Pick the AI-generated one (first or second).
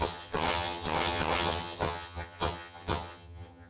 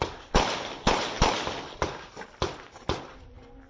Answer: first